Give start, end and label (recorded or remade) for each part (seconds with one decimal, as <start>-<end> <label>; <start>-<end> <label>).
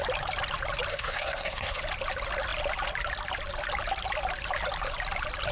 0.0-0.9 recorded; 0.9-1.8 remade; 1.8-5.5 recorded